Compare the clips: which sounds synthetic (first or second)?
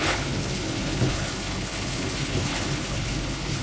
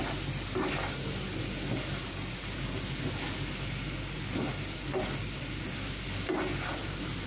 first